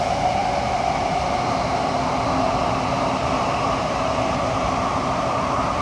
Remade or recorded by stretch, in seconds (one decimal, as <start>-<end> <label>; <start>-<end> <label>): 0.0-5.8 recorded